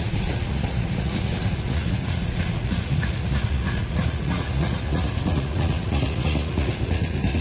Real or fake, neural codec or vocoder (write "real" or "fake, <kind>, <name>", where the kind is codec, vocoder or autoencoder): fake, vocoder, Vocos